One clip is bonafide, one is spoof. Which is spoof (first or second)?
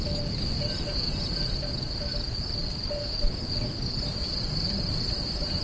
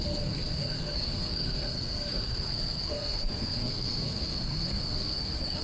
second